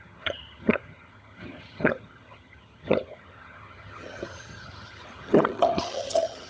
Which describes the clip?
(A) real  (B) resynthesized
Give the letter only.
B